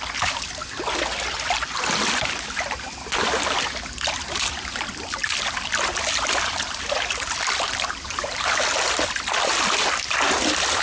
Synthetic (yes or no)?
yes